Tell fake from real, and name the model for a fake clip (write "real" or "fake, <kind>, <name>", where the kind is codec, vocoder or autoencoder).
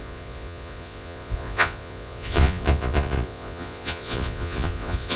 fake, vocoder, Vocos